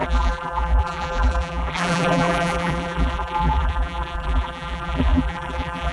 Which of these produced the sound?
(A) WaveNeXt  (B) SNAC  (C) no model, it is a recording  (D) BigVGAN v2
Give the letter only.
D